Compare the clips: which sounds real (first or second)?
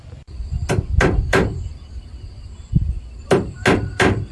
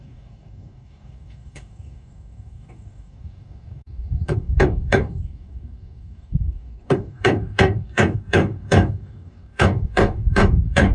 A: first